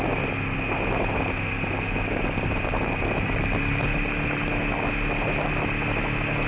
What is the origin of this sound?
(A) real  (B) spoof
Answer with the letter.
A